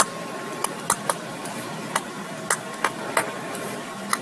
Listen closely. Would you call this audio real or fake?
real